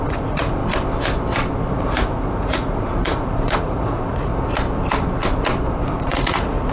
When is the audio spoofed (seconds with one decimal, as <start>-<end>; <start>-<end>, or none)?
0.0-0.6; 1.7-4.3; 5.7-6.7